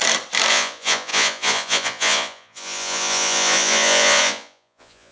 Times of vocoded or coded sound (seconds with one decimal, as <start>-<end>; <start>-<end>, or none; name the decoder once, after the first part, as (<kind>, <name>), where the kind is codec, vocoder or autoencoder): 0.5-5.1 (vocoder, Vocos)